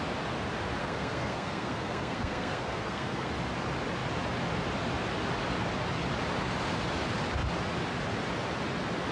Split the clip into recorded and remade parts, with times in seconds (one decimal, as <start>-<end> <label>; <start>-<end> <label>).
0.0-0.8 recorded; 0.8-3.3 remade; 3.3-9.1 recorded